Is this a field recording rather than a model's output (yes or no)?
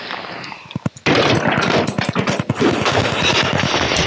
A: yes